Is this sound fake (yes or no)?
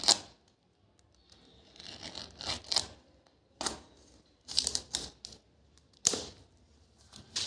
no